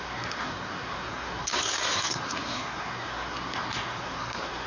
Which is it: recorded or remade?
remade